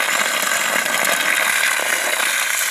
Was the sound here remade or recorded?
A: recorded